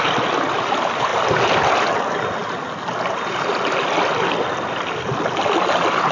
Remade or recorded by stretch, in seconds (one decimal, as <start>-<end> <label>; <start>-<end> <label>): 0.0-6.1 recorded